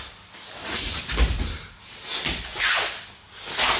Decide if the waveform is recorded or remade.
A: recorded